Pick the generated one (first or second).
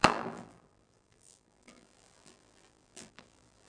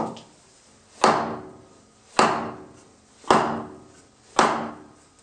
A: first